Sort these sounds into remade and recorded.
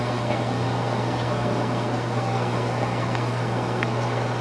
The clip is remade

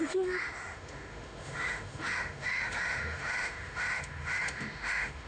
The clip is remade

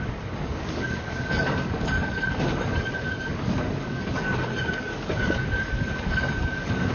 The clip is remade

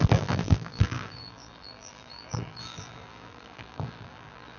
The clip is remade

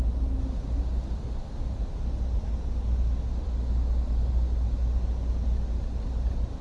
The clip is recorded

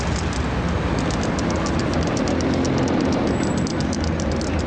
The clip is recorded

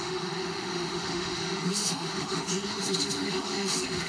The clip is remade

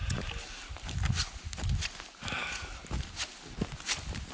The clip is recorded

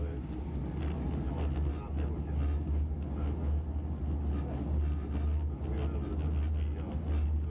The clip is recorded